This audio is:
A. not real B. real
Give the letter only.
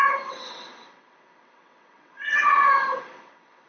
A